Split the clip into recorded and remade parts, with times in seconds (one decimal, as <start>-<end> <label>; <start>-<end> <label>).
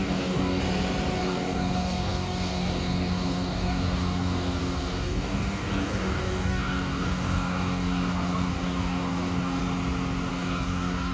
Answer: 0.0-0.6 remade; 0.6-1.2 recorded; 1.2-9.6 remade; 9.6-10.3 recorded; 10.3-11.1 remade